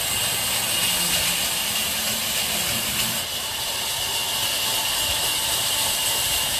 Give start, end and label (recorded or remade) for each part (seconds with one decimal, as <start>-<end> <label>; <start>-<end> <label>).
0.0-1.8 recorded; 1.8-3.8 remade; 3.8-6.6 recorded